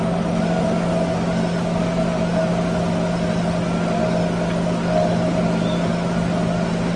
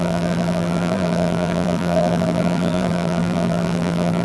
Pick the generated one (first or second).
second